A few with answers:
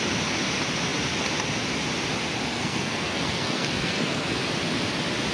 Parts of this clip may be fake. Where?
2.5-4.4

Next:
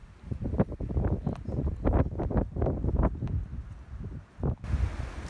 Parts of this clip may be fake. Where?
none